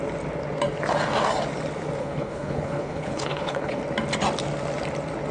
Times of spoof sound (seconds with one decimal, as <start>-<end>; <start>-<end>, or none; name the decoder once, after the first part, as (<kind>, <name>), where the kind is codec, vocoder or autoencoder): 2.0-3.8 (codec, HILCodec)